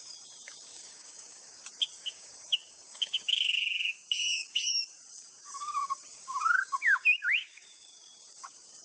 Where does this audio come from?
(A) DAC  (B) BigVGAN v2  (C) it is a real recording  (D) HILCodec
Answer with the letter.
A